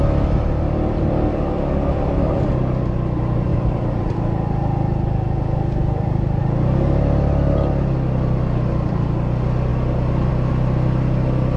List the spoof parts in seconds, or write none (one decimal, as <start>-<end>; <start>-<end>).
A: 3.5-4.1; 5.8-6.4